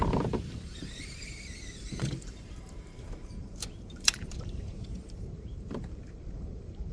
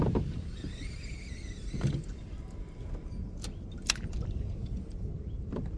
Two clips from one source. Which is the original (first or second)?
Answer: second